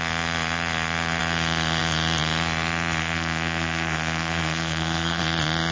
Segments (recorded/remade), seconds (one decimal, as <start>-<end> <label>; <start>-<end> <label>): 0.0-3.0 recorded; 3.0-5.2 remade; 5.2-5.7 recorded

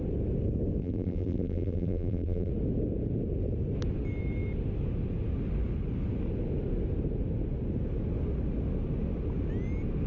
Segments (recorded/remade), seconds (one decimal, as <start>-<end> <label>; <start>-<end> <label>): 0.0-0.8 recorded; 0.8-2.5 remade; 2.5-10.1 recorded

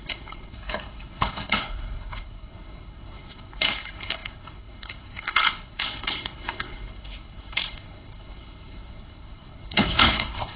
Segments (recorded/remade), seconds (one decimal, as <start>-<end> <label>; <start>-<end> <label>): 0.0-10.6 remade

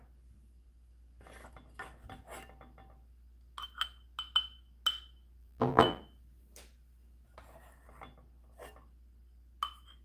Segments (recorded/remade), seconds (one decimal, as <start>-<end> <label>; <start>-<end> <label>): 0.0-5.4 recorded; 5.4-6.0 remade; 6.0-10.0 recorded

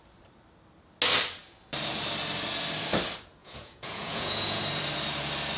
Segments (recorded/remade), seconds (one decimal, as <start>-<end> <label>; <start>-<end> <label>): 0.0-3.4 recorded; 3.4-4.6 remade; 4.6-5.6 recorded

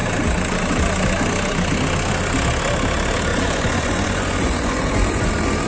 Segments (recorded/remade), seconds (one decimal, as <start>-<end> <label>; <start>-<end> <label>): 0.0-3.3 recorded; 3.3-5.3 remade; 5.3-5.7 recorded

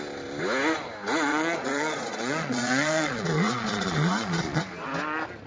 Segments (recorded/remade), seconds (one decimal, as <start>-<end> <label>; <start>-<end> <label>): 0.0-1.3 recorded; 1.3-4.6 remade; 4.6-5.5 recorded

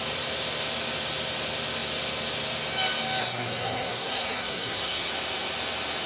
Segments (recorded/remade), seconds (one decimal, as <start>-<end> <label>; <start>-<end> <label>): 0.0-3.2 recorded; 3.2-5.1 remade; 5.1-6.1 recorded